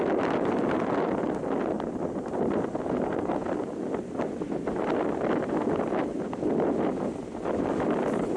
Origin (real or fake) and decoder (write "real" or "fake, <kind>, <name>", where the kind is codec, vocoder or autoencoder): real